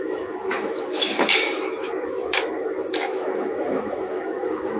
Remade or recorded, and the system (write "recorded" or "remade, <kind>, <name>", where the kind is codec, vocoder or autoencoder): remade, autoencoder, DAC-VAE